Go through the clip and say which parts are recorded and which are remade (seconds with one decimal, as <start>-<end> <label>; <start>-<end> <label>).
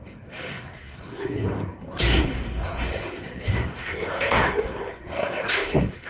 0.0-6.1 remade